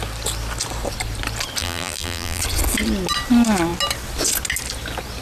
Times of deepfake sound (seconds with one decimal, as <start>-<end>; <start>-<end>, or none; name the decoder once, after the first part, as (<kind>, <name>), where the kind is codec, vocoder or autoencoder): 1.6-2.4 (vocoder, BigVGAN v2)